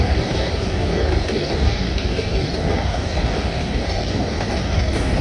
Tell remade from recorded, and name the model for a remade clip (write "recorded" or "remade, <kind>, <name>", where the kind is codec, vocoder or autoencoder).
remade, codec, DAC